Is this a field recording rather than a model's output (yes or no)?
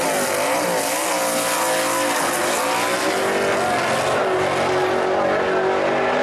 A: yes